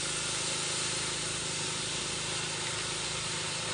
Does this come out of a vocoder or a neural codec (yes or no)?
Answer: no